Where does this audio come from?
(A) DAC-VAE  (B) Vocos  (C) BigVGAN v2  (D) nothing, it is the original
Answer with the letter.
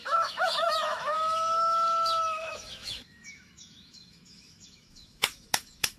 A